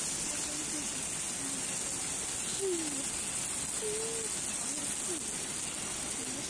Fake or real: real